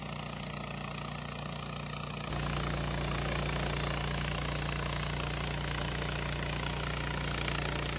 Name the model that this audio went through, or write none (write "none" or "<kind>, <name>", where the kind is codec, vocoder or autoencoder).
none